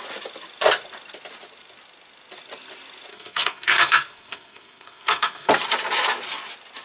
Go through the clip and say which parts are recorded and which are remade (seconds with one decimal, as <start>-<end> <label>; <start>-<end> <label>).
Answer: 0.0-3.1 recorded; 3.1-5.5 remade; 5.5-6.8 recorded

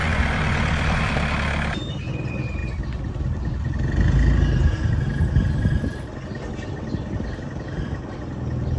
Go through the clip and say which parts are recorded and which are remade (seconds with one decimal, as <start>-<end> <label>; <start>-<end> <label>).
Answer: 0.0-1.0 remade; 1.0-8.8 recorded